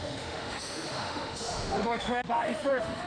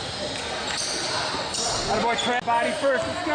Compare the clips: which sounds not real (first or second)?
first